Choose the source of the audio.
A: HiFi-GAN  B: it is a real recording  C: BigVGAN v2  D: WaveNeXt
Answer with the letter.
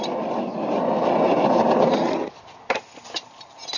B